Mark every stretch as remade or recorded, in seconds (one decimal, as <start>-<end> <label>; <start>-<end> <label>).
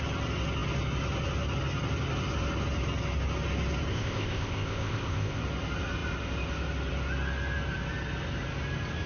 0.0-3.9 recorded; 3.9-5.4 remade; 5.4-9.1 recorded